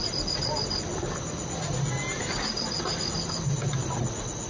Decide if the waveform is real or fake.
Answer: real